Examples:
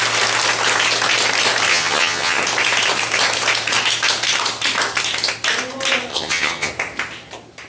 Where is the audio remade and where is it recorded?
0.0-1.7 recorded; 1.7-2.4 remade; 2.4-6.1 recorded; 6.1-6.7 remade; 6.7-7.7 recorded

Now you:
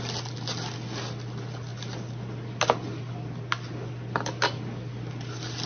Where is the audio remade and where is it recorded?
0.0-5.7 recorded

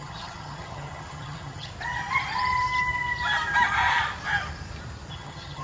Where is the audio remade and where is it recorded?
0.0-1.7 remade; 1.7-5.1 recorded; 5.1-5.6 remade

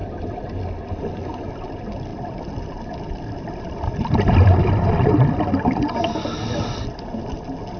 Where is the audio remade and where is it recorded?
0.0-7.8 recorded

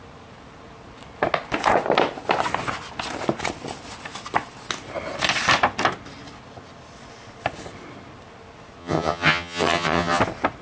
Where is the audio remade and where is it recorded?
0.0-8.8 recorded; 8.8-10.2 remade; 10.2-10.6 recorded

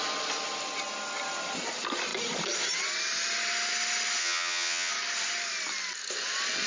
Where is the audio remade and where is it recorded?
0.0-4.2 recorded; 4.2-4.9 remade; 4.9-6.7 recorded